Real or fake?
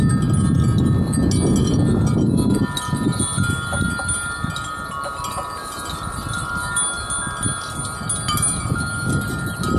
real